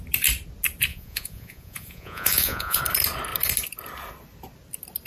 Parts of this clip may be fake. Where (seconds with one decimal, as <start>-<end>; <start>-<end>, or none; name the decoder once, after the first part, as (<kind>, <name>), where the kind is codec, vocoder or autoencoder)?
0.9-2.8 (vocoder, Vocos)